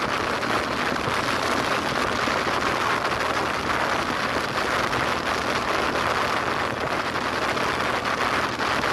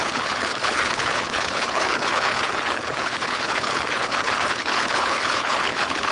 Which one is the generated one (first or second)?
second